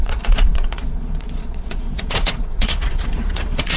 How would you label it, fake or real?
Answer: fake